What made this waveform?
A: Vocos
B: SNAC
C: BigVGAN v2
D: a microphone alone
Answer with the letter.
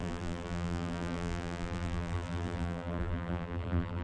C